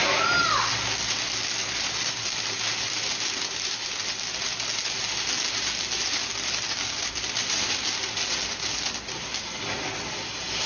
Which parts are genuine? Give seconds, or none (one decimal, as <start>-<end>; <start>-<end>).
0.0-10.7